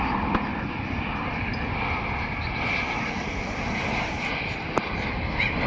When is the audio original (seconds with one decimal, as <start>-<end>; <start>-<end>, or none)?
0.0-5.7